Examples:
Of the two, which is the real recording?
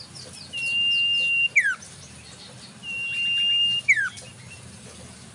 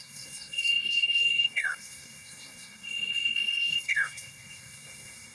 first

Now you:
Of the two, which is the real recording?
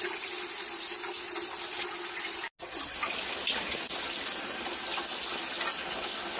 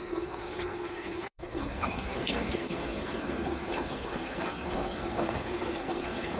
first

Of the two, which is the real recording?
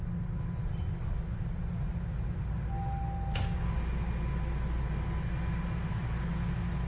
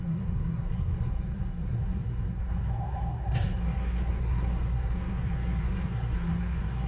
first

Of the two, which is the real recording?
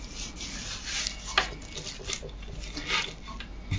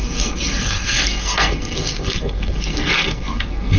first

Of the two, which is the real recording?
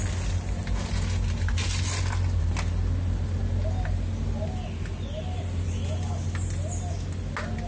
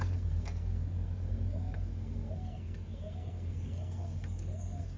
first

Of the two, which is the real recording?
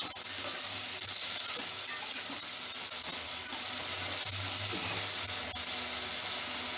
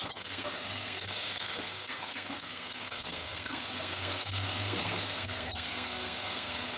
first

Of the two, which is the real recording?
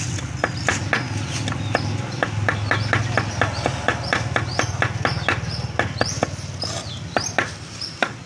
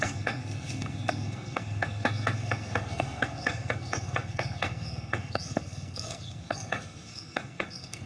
first